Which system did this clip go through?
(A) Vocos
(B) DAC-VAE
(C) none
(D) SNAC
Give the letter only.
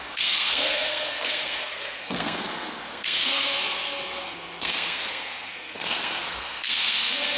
D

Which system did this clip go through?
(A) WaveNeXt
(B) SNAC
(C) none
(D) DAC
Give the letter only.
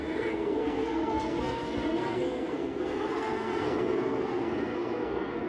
B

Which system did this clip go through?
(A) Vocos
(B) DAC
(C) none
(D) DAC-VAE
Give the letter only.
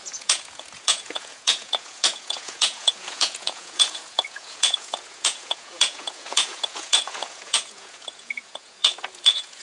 A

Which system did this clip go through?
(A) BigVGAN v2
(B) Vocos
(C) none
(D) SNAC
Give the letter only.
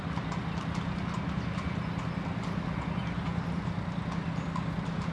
C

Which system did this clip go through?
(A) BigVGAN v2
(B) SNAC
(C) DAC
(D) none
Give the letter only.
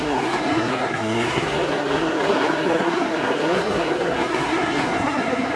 B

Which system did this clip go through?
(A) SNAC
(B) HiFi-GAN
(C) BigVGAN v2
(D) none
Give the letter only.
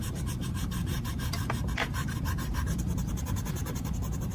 C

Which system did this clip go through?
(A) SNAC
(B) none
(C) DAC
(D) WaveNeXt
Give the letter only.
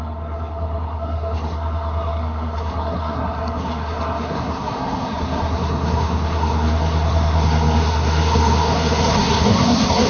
A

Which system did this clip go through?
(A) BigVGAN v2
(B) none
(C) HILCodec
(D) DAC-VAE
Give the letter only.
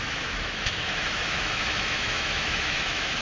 D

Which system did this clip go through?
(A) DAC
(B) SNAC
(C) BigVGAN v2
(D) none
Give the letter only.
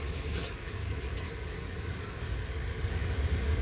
A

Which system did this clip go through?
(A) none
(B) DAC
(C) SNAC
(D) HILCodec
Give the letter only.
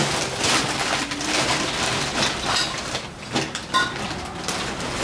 A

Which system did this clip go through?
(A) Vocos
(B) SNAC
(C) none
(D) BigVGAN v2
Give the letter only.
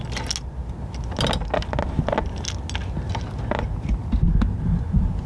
C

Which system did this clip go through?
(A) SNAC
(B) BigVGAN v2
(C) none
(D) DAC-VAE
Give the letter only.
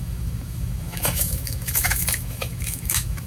D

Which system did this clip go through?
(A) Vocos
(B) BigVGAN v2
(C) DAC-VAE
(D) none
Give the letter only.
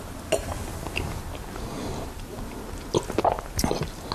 D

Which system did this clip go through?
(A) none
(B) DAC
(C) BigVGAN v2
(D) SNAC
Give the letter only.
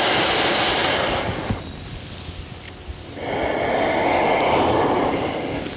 A